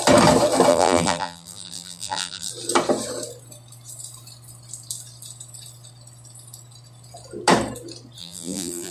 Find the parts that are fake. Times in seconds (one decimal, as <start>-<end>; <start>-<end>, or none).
0.7-2.5; 8.2-8.9

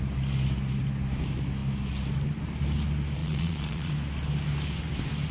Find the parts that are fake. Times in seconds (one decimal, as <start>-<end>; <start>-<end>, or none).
3.2-3.9

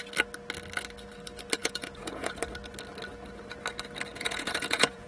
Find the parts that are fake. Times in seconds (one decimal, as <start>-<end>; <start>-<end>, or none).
1.6-2.4; 4.1-5.1

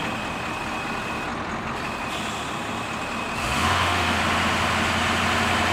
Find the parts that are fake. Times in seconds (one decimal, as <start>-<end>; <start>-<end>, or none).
3.4-4.2

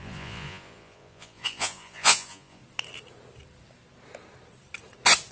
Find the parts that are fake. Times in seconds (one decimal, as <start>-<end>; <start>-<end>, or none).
0.0-2.6